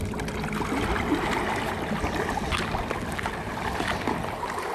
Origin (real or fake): real